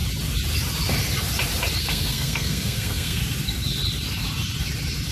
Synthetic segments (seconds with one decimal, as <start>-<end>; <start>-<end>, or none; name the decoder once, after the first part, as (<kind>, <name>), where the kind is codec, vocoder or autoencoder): 1.8-3.2 (codec, SNAC)